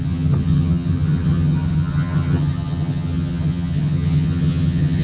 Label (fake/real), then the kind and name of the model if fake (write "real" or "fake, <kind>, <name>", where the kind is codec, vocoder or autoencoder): fake, vocoder, HiFi-GAN